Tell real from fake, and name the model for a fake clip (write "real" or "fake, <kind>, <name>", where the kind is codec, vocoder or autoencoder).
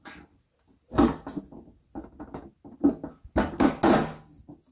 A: real